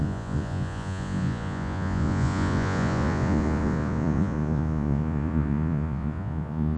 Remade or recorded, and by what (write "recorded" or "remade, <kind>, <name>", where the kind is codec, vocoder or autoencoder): remade, vocoder, Vocos